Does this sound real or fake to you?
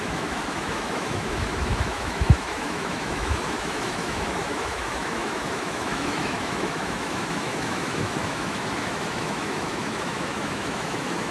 fake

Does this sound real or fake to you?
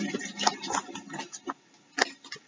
real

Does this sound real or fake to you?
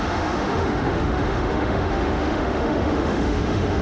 fake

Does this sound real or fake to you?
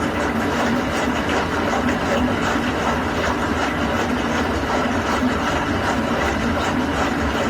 real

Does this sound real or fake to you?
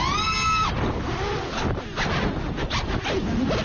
real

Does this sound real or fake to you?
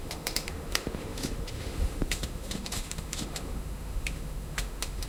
fake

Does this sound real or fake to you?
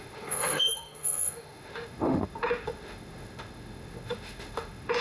fake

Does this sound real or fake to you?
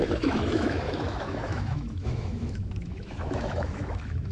fake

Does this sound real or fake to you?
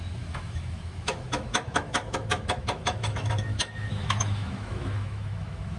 fake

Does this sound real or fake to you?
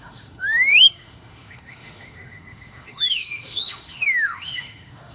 fake